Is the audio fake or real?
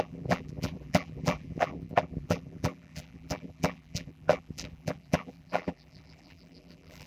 fake